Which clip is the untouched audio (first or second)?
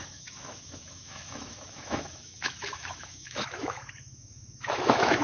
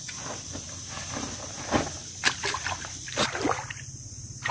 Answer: second